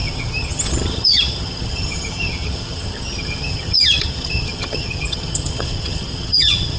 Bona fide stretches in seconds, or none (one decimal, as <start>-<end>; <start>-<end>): none